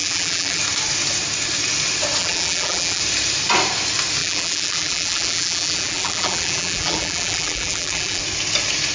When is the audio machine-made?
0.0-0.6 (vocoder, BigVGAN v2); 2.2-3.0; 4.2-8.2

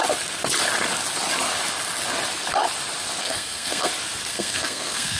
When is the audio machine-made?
3.2-3.9 (codec, SNAC); 4.3-5.2

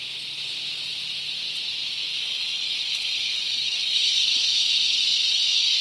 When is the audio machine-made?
2.1-5.8 (codec, DAC)